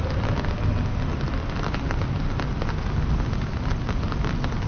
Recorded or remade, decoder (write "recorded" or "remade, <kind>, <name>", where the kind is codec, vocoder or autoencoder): recorded